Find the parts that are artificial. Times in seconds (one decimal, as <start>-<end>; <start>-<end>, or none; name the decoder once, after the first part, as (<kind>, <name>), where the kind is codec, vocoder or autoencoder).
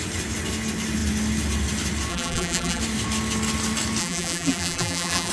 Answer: 2.1-2.8 (vocoder, BigVGAN v2); 4.0-5.3